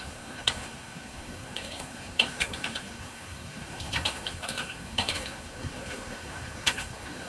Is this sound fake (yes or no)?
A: yes